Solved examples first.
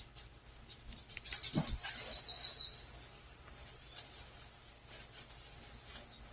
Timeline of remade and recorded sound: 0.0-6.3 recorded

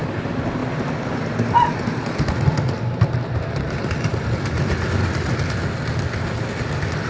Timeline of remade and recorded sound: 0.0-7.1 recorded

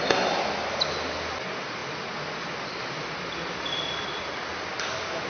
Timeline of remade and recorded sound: 0.0-5.3 recorded